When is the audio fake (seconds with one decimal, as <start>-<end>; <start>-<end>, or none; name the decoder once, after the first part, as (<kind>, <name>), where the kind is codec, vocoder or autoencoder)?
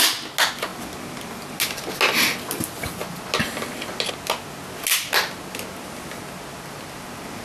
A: none